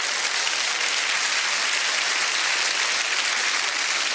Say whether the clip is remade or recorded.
recorded